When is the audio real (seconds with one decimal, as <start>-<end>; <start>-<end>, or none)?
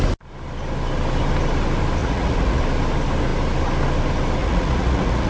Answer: 0.0-2.0; 2.6-4.4